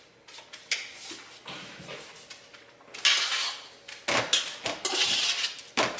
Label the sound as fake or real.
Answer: real